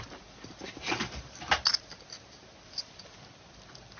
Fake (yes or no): no